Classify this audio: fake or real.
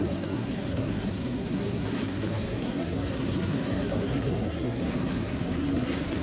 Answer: fake